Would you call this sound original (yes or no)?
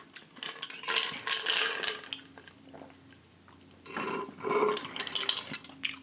yes